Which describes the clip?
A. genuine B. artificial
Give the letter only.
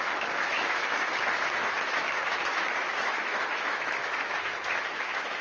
B